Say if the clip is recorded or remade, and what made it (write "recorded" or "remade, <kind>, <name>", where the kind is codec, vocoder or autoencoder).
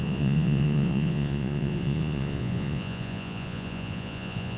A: remade, vocoder, Vocos